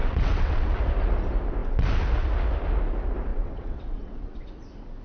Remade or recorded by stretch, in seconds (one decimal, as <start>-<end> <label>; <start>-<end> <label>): 0.0-0.8 remade; 0.8-3.3 recorded; 3.3-4.4 remade; 4.4-5.0 recorded